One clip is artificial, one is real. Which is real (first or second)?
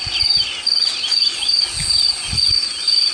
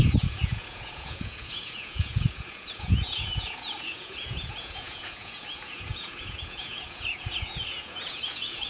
first